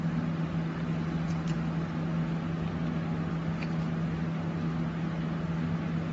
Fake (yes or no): no